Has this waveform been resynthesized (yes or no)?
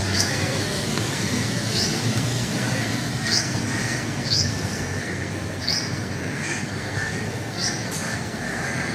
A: yes